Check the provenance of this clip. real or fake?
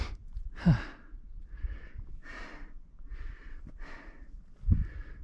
fake